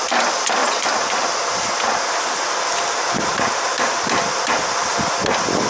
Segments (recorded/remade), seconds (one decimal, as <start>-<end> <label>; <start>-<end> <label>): 0.0-5.7 recorded